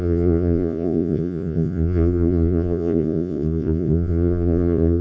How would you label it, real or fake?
fake